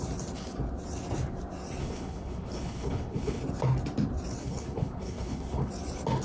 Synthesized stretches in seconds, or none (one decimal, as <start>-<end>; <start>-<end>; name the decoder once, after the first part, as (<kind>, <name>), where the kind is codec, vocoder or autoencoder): 1.8-3.4 (codec, HILCodec); 4.4-5.7